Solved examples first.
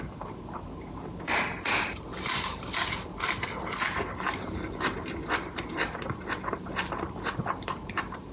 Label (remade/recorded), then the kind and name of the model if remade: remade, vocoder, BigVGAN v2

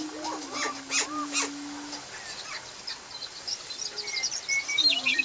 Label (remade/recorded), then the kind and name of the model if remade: recorded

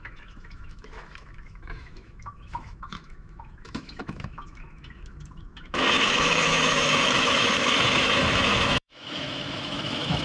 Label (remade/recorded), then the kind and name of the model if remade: remade, autoencoder, DAC-VAE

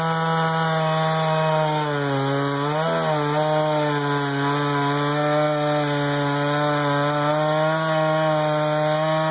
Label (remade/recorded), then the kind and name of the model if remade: recorded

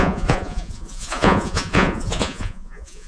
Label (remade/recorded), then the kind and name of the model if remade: remade, vocoder, Vocos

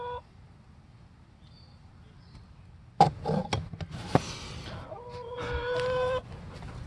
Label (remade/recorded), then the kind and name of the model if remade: recorded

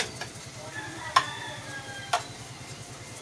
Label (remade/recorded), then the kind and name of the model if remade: recorded